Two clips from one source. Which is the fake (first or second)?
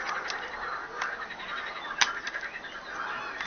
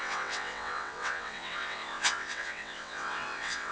second